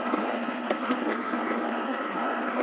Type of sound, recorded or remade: remade